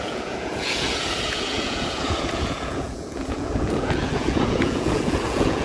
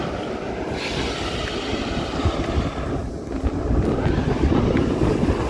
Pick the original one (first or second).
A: second